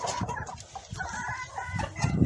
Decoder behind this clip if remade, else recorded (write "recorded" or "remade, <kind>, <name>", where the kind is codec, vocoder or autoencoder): recorded